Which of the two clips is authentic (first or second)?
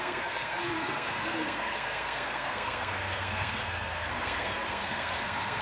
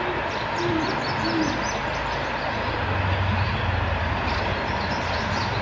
second